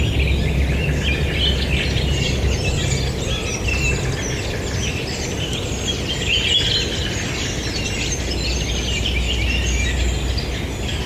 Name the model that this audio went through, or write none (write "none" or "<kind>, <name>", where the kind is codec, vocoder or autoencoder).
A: none